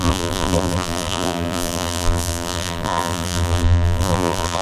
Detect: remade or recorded remade